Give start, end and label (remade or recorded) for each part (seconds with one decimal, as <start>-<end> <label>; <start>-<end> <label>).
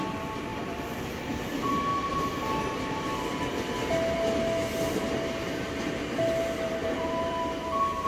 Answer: 0.0-0.5 recorded; 0.5-1.4 remade; 1.4-1.9 recorded; 1.9-3.1 remade; 3.1-6.8 recorded; 6.8-8.1 remade